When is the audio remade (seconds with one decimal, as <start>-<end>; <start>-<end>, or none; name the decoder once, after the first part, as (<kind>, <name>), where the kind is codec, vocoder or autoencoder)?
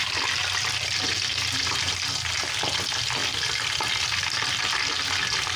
0.4-2.5 (vocoder, BigVGAN v2)